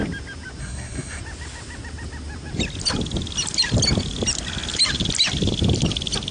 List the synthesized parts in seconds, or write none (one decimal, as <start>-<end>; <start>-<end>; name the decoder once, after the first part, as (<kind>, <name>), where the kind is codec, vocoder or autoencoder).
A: 0.6-1.2 (codec, SNAC)